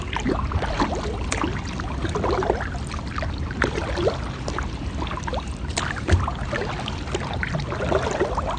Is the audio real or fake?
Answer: real